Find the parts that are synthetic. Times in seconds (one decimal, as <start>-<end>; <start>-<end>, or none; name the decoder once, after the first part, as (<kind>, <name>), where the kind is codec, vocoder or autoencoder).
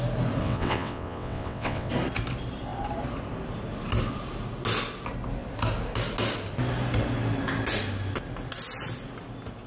0.4-1.9 (vocoder, WaveNeXt)